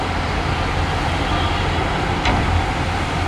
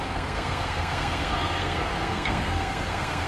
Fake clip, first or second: second